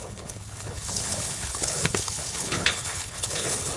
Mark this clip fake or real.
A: fake